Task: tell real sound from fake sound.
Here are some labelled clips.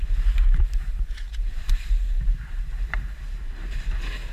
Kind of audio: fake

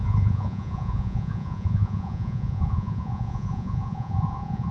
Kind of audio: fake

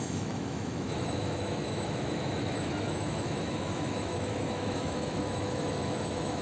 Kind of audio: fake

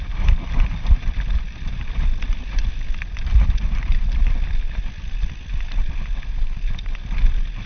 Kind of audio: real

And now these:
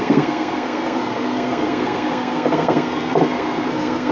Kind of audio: fake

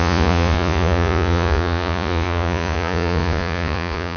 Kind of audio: fake